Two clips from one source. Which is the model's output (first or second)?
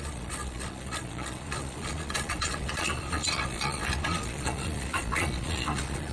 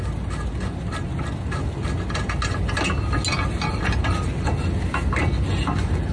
first